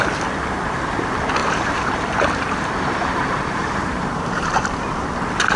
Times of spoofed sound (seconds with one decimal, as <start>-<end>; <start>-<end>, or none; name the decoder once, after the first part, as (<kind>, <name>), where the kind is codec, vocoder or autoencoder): 1.4-4.8 (vocoder, BigVGAN v2)